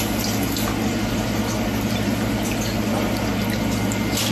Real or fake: real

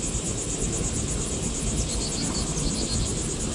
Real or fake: real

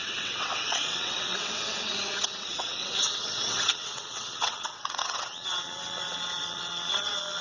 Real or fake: fake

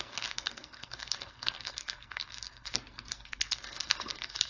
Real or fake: fake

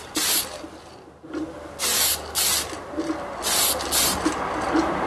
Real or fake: real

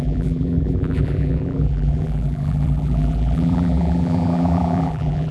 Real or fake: fake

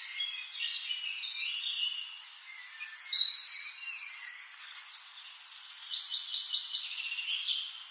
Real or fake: real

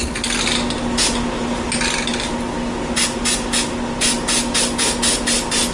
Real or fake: real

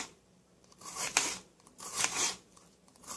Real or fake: fake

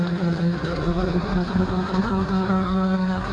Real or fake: fake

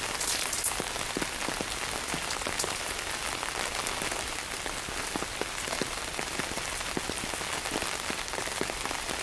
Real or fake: real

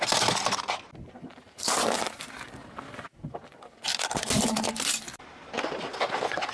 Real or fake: real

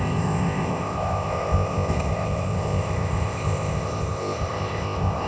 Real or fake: fake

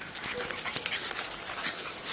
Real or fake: real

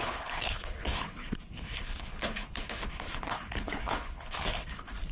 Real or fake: fake